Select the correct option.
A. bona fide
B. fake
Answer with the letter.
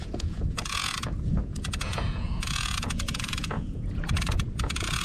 B